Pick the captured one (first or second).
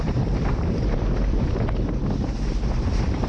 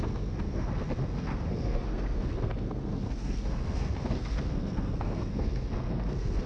first